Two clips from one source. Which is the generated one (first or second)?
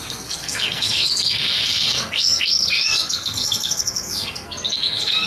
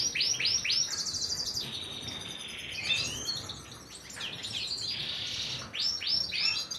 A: first